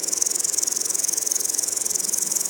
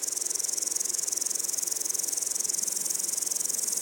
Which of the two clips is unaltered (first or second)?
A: second